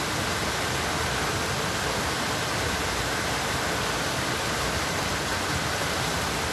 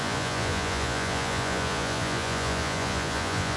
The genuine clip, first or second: first